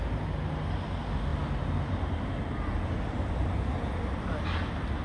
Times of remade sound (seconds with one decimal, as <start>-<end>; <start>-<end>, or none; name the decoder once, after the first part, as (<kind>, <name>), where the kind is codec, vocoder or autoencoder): none